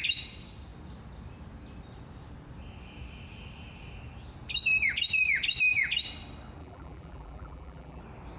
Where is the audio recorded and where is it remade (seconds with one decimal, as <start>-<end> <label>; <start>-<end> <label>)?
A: 0.0-6.6 recorded; 6.6-8.0 remade; 8.0-8.4 recorded